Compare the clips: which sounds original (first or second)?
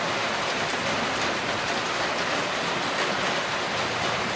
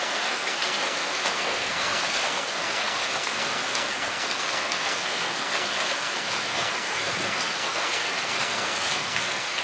first